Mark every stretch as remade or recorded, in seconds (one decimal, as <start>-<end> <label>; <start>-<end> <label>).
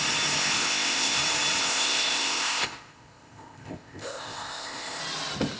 0.0-0.4 recorded; 0.4-1.2 remade; 1.2-1.6 recorded; 1.6-5.0 remade; 5.0-5.6 recorded